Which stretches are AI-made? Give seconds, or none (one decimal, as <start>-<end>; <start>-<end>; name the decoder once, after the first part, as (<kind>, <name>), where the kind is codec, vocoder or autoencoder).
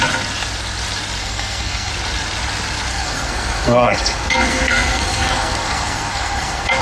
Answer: 1.2-1.9 (codec, SNAC); 2.9-6.8